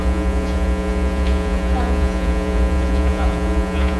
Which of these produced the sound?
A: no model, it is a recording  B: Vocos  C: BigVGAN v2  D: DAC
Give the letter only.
B